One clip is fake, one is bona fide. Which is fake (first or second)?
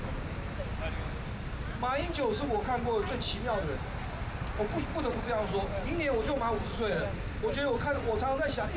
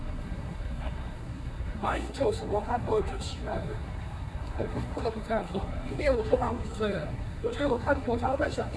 second